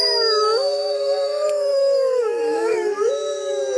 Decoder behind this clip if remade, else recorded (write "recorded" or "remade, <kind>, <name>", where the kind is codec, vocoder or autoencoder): remade, autoencoder, DAC-VAE